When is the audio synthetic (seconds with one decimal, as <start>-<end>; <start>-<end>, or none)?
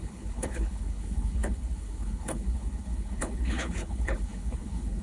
0.0-5.0